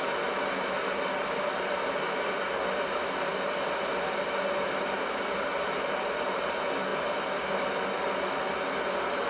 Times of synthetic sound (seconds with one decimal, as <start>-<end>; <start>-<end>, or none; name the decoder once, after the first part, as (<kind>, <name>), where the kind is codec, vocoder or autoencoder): none